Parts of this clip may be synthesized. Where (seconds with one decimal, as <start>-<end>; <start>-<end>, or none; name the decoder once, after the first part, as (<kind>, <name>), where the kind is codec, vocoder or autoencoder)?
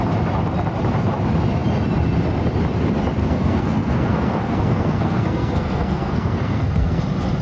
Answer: 3.2-7.0 (codec, SNAC)